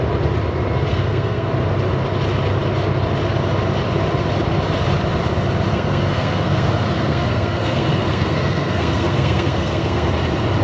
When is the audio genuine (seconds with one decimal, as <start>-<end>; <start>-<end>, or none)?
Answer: 0.0-0.9; 1.5-5.7; 10.1-10.6